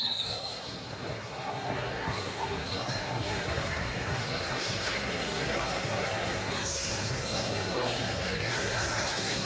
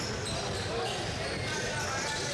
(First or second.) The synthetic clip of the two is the first